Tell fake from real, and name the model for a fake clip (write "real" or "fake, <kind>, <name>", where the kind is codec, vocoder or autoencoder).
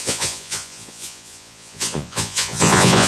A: fake, vocoder, Vocos